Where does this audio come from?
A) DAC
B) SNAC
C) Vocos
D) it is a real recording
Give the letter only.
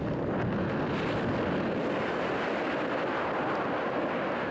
D